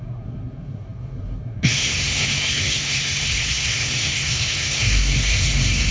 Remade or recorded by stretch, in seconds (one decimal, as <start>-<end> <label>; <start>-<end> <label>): 0.0-5.9 remade